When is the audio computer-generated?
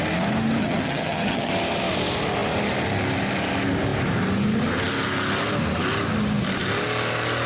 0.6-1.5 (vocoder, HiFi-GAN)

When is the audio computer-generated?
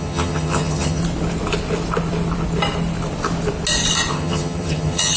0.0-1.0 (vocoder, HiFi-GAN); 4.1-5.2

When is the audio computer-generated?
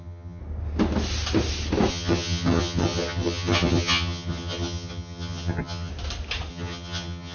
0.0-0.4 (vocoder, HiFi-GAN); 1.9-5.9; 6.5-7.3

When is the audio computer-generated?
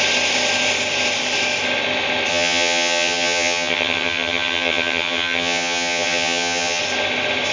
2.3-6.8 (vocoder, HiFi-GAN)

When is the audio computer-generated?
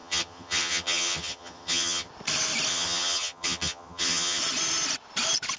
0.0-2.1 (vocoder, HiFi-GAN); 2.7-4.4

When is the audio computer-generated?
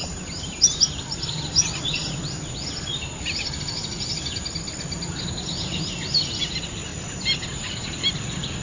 none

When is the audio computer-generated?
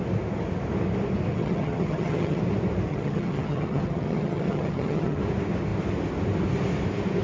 1.3-2.4 (vocoder, HiFi-GAN); 2.9-5.2